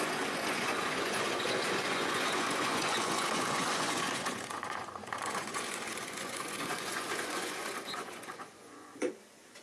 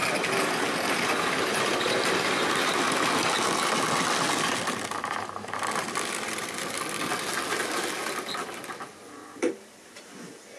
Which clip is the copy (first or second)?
first